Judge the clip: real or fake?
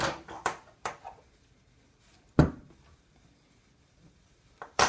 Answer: fake